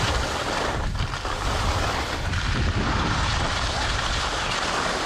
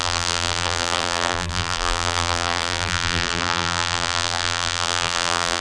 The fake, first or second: second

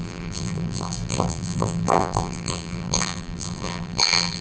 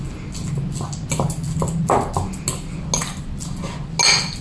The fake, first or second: first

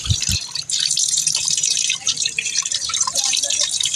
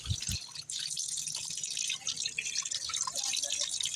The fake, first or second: first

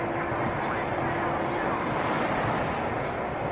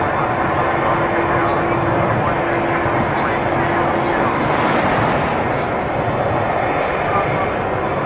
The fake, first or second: first